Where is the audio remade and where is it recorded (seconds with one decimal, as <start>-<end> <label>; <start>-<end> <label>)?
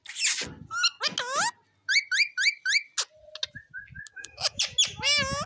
0.0-4.1 recorded; 4.1-4.6 remade; 4.6-5.5 recorded